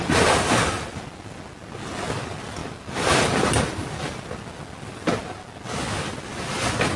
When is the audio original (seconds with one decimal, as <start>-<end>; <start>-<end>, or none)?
0.0-7.0